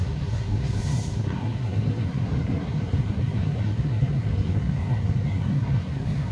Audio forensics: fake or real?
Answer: fake